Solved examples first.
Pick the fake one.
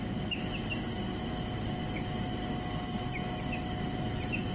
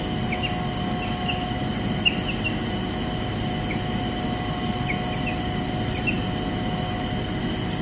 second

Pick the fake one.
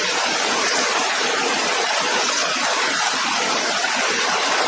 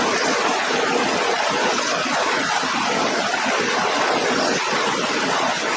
first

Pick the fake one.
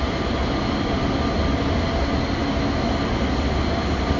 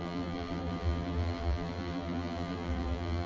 second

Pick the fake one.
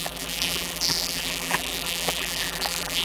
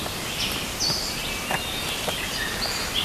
first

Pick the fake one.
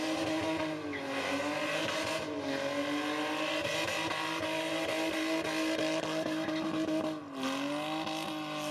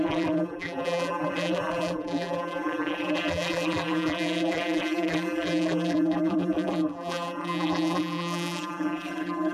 second